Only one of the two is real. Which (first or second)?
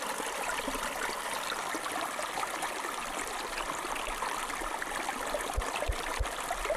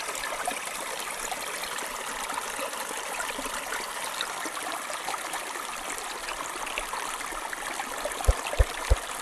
first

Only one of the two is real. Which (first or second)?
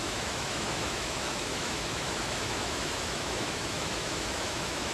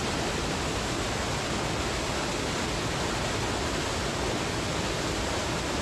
second